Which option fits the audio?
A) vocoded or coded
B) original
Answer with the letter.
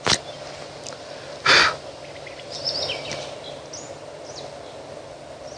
B